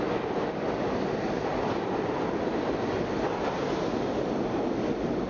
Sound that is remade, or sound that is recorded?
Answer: recorded